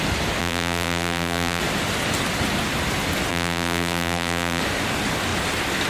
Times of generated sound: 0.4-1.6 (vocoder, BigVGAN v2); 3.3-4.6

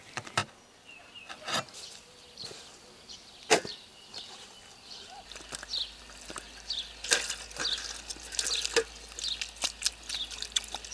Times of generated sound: 0.4-1.3 (vocoder, BigVGAN v2)

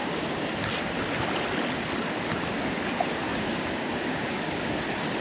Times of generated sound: 0.0-0.5 (codec, DAC); 3.3-4.8

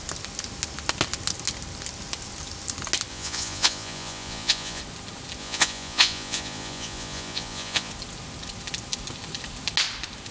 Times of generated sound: 3.1-4.8 (vocoder, Vocos); 5.4-7.9

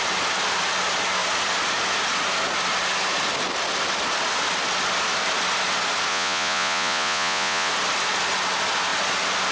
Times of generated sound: 6.1-7.7 (vocoder, Vocos)

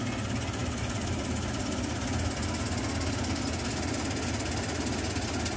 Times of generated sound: none

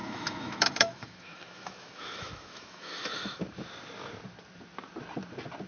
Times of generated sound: 0.0-3.4 (autoencoder, DAC-VAE)

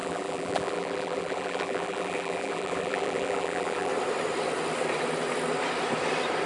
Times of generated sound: 0.0-3.9 (vocoder, BigVGAN v2)